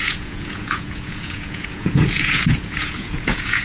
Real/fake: fake